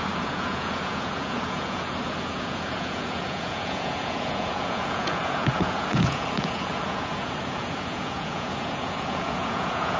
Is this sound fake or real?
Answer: fake